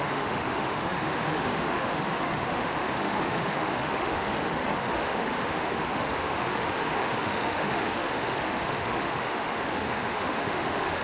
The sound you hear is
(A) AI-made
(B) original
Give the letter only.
A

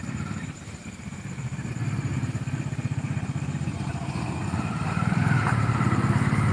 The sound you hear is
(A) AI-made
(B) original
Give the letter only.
A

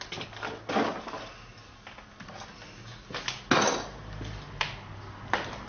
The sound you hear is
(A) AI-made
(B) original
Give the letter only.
B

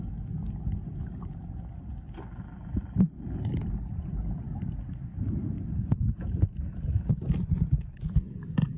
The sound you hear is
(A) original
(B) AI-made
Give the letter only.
A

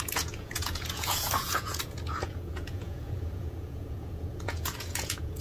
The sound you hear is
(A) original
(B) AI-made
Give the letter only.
B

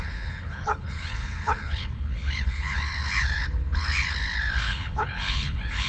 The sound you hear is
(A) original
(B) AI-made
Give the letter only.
B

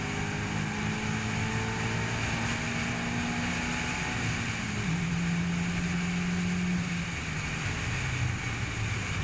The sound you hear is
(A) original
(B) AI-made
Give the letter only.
A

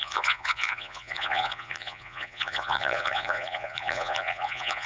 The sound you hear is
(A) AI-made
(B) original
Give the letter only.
A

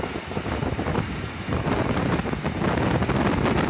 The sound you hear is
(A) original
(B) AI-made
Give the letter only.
A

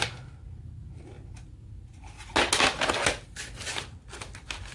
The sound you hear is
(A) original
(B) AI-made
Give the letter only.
A